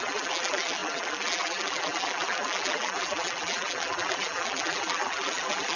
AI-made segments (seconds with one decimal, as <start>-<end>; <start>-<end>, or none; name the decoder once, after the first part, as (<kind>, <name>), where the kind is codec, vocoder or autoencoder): 0.0-5.8 (vocoder, BigVGAN v2)